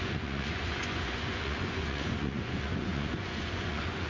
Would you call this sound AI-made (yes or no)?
yes